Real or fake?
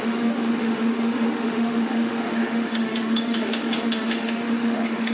fake